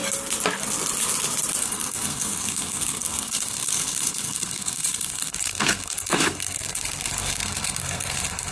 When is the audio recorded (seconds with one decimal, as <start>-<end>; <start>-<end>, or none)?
0.0-1.6